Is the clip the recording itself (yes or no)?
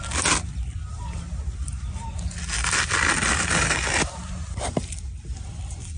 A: yes